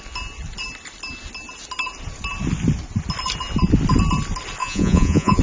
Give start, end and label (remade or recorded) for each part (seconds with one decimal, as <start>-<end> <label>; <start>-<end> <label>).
0.0-4.6 recorded; 4.6-5.4 remade